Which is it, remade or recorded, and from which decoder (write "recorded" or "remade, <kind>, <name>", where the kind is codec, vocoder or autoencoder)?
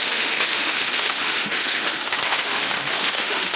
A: remade, autoencoder, DAC-VAE